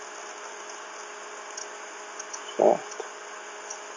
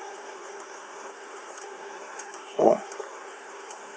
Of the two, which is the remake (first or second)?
second